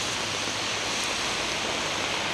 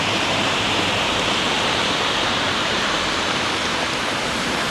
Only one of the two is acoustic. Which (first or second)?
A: first